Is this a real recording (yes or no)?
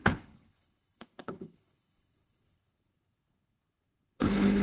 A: no